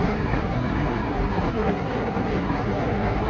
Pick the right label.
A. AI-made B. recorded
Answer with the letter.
A